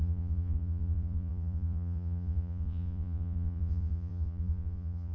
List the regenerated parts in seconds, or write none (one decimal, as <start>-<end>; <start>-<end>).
0.0-5.1